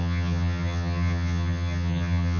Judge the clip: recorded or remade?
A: remade